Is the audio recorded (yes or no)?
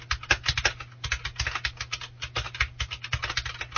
yes